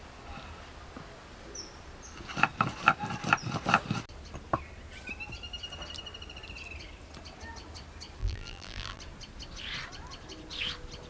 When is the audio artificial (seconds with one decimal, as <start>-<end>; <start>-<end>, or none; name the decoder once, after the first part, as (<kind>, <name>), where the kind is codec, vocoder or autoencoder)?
8.2-9.0 (vocoder, BigVGAN v2)